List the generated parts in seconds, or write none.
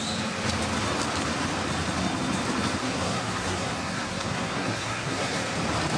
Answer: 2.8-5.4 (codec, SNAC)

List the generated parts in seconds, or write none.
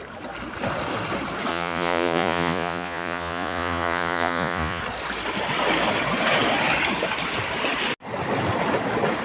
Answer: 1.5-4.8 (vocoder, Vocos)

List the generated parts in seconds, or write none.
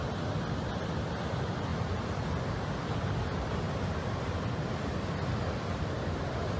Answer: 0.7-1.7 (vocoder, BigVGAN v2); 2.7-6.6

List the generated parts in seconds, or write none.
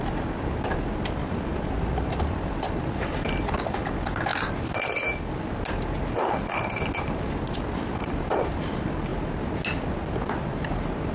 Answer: 0.0-4.3 (vocoder, BigVGAN v2); 7.4-9.1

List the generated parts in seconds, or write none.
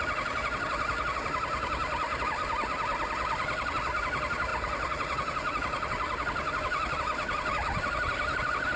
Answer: none